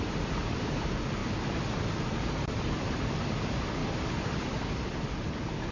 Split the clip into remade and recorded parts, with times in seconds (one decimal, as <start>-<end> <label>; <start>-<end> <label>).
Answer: 0.0-5.7 recorded